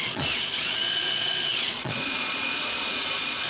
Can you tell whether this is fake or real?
fake